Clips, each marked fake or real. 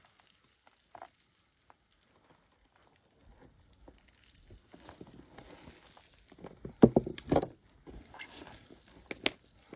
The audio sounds real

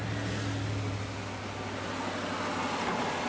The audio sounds real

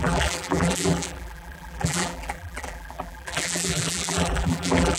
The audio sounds fake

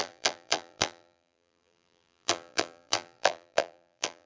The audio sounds fake